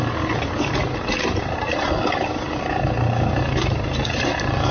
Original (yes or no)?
yes